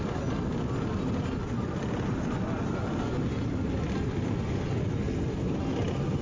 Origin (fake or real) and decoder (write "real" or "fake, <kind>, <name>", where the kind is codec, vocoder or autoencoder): real